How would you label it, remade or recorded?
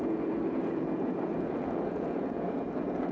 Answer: remade